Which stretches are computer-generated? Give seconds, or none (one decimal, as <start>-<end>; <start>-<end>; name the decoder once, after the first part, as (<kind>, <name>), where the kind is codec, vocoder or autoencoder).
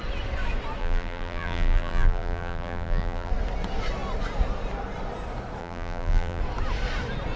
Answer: 0.8-3.3 (vocoder, BigVGAN v2); 5.6-6.4